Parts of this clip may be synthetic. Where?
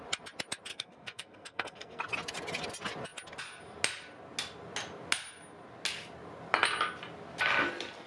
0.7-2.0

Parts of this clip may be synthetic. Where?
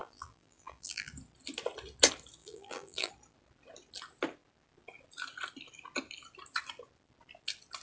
0.0-1.1; 2.4-3.1